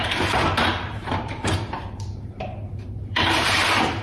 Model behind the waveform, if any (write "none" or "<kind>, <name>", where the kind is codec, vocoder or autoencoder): vocoder, BigVGAN v2